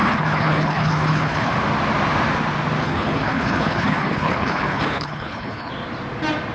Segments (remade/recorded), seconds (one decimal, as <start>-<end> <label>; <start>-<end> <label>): 0.0-1.5 remade; 1.5-2.8 recorded; 2.8-5.7 remade; 5.7-6.5 recorded